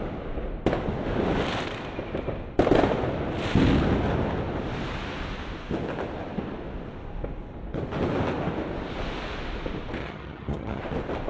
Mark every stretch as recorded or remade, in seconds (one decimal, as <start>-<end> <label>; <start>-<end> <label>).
0.0-10.0 recorded; 10.0-10.8 remade; 10.8-11.3 recorded

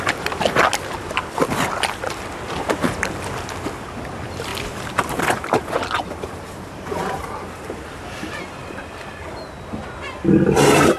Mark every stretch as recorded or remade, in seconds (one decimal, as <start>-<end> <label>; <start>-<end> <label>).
0.0-4.5 recorded; 4.5-5.1 remade; 5.1-8.6 recorded; 8.6-9.8 remade; 9.8-11.0 recorded

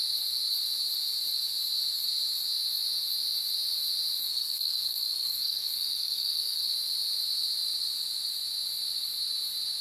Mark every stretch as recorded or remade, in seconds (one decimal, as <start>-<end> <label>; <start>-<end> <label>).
0.0-4.2 recorded; 4.2-6.6 remade; 6.6-9.8 recorded

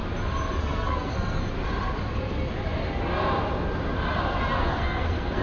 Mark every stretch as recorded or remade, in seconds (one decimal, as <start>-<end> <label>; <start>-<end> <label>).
0.0-0.6 recorded; 0.6-1.4 remade; 1.4-4.6 recorded; 4.6-5.4 remade

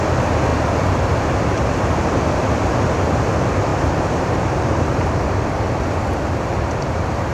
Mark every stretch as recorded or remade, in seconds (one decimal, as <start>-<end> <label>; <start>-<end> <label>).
0.0-3.7 recorded; 3.7-5.2 remade; 5.2-7.3 recorded

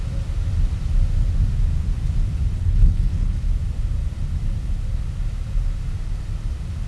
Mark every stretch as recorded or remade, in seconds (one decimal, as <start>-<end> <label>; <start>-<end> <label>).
0.0-2.6 recorded; 2.6-3.4 remade; 3.4-6.9 recorded